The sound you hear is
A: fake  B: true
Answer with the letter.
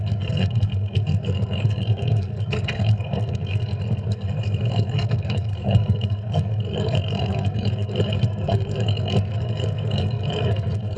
A